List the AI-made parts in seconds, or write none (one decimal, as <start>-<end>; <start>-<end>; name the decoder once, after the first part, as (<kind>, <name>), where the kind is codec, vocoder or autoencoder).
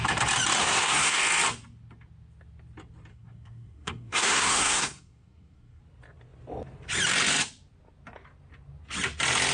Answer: 0.6-1.2 (codec, SNAC); 3.1-5.8